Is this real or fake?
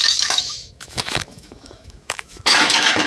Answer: fake